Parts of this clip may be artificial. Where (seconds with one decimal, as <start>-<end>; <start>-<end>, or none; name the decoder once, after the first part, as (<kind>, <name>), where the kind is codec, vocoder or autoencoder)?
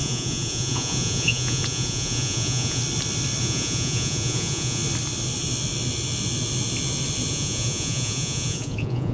0.0-2.8 (vocoder, Vocos); 3.4-4.8; 7.3-9.1